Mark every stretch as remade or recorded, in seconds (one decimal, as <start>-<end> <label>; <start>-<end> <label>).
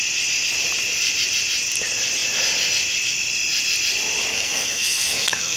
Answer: 0.0-4.3 recorded; 4.3-5.6 remade